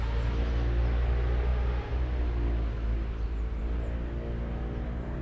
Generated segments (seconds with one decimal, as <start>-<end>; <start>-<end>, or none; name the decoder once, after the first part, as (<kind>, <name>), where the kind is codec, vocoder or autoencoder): none